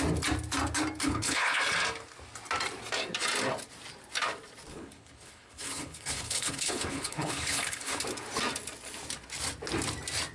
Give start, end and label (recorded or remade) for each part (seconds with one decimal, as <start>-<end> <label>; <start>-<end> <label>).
0.0-1.0 recorded; 1.0-1.6 remade; 1.6-4.7 recorded; 4.7-8.0 remade; 8.0-10.3 recorded